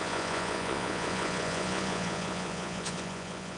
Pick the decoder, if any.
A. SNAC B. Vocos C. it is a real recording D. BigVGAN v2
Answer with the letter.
B